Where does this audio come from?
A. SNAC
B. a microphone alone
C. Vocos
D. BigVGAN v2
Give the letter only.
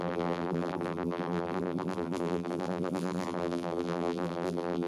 D